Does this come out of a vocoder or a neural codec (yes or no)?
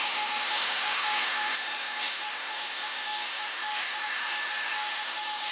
yes